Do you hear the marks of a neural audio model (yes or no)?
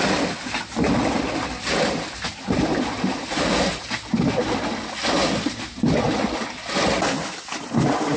no